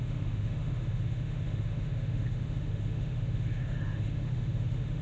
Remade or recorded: remade